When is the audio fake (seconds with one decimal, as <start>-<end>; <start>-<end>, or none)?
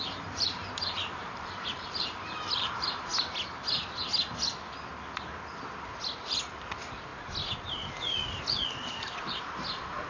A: 0.0-3.1; 6.2-7.1; 9.4-10.1